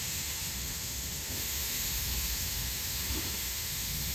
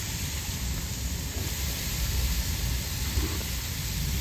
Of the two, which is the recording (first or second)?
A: second